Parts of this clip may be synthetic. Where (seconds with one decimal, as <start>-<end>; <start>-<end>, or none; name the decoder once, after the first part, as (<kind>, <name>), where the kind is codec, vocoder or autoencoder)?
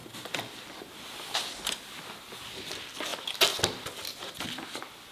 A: none